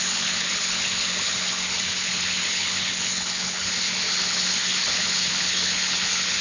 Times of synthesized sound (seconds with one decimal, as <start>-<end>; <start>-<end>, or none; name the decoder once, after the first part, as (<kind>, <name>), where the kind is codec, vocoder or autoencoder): 0.0-6.4 (codec, HILCodec)